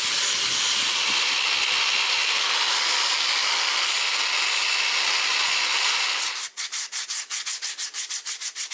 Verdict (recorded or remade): recorded